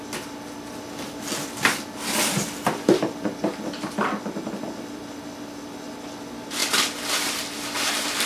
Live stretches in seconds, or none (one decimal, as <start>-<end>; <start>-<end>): 0.0-8.3